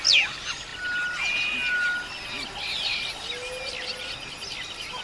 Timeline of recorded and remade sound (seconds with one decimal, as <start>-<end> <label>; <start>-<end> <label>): 0.0-5.0 recorded